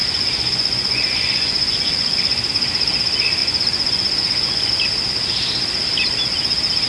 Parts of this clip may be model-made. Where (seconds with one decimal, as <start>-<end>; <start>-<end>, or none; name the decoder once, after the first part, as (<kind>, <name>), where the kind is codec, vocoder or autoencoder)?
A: 0.0-2.5 (vocoder, Vocos); 3.4-4.7